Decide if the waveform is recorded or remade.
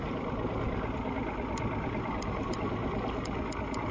recorded